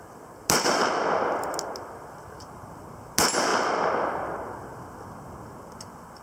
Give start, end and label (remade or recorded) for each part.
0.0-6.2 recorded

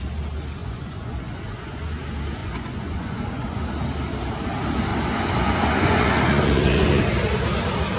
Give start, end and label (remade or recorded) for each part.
0.0-0.6 recorded; 0.6-2.0 remade; 2.0-2.4 recorded; 2.4-3.7 remade; 3.7-4.9 recorded; 4.9-7.0 remade; 7.0-8.0 recorded

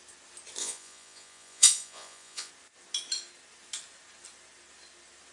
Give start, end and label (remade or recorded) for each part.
0.0-0.6 recorded; 0.6-2.5 remade; 2.5-5.3 recorded

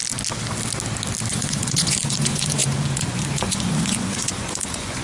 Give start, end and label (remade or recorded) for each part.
0.0-1.3 recorded; 1.3-5.0 remade

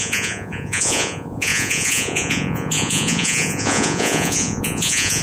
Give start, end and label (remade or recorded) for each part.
0.0-5.2 remade

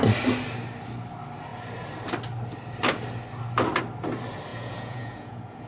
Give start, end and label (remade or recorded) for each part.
0.0-4.5 recorded; 4.5-5.7 remade

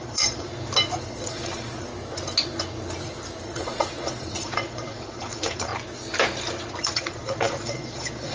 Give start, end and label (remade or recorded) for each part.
0.0-0.5 remade; 0.5-1.0 recorded; 1.0-1.9 remade; 1.9-3.4 recorded; 3.4-5.7 remade; 5.7-6.8 recorded; 6.8-8.3 remade

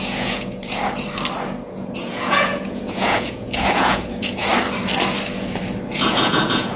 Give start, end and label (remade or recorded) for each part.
0.0-0.8 remade; 0.8-1.6 recorded; 1.6-4.5 remade; 4.5-5.9 recorded; 5.9-6.8 remade